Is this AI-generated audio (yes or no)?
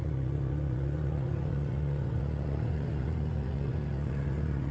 yes